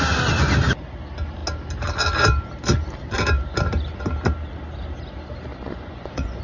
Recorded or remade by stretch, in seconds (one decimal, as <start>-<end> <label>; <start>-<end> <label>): 0.0-5.5 recorded; 5.5-6.4 remade